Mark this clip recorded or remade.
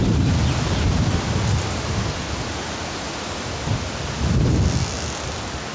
recorded